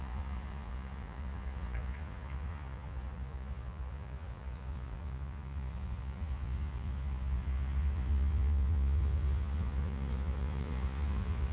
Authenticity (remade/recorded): remade